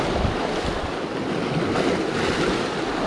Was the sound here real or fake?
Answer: real